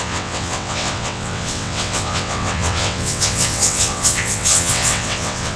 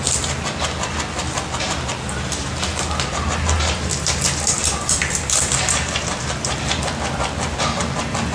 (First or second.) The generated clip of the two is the first